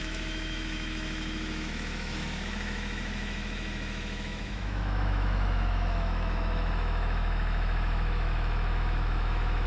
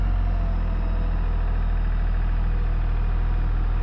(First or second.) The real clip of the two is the second